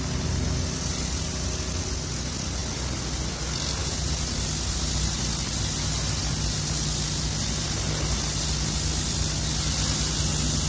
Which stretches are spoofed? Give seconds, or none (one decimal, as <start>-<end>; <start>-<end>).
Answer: none